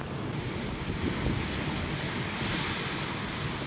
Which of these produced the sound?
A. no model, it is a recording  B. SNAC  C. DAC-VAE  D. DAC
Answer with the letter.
A